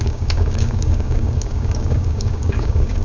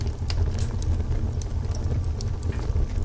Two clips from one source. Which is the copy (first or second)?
first